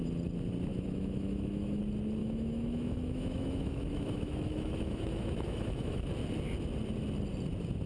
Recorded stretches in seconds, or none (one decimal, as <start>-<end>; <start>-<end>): 0.0-0.7; 1.8-2.2; 6.1-7.9